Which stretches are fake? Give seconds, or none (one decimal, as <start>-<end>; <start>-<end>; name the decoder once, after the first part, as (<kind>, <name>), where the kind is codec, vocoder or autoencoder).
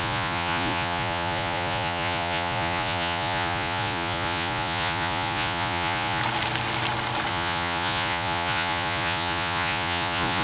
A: 0.0-6.2 (vocoder, Vocos); 7.3-10.4